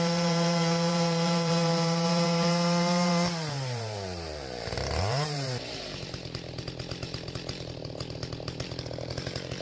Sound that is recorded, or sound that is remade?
remade